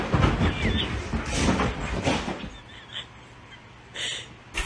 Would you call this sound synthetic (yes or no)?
no